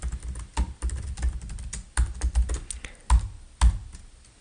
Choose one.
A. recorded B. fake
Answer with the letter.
A